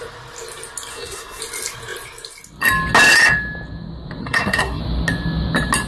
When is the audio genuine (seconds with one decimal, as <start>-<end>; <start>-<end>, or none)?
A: 0.0-0.9; 1.4-4.2; 4.8-5.9